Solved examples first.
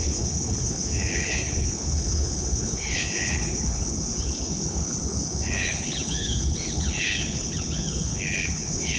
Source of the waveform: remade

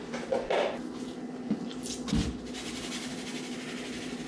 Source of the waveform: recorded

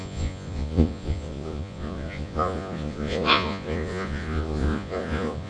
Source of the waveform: remade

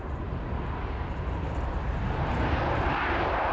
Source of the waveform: remade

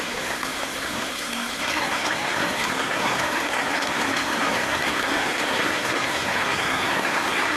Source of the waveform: remade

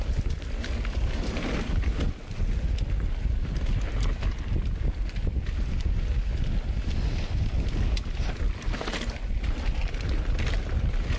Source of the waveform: recorded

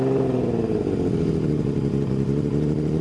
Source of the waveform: recorded